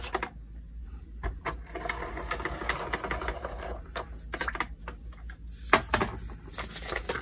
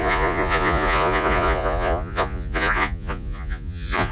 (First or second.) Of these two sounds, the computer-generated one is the second